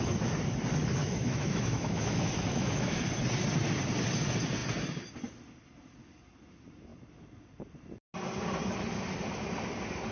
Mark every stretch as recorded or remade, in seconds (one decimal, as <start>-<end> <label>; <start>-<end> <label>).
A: 0.0-1.0 recorded; 1.0-3.0 remade; 3.0-10.1 recorded